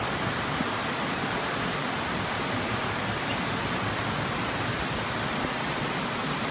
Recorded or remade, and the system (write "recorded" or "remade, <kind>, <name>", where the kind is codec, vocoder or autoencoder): recorded